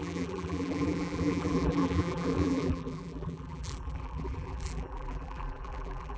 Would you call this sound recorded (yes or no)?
no